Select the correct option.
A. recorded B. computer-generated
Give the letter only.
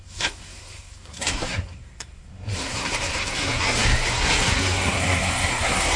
B